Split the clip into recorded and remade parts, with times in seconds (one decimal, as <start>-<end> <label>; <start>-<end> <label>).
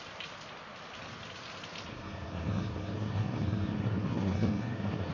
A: 0.0-1.9 recorded; 1.9-5.1 remade